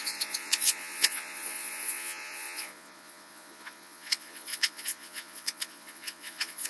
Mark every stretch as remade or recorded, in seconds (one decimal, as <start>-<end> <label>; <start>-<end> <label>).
0.0-6.7 remade